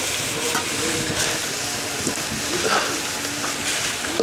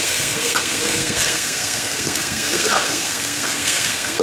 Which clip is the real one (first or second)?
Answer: first